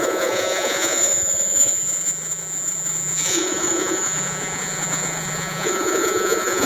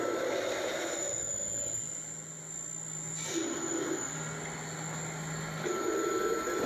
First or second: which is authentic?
second